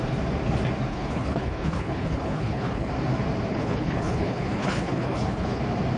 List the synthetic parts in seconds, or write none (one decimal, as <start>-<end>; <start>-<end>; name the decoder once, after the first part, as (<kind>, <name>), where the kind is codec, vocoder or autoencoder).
0.9-2.9 (codec, HILCodec); 3.5-5.6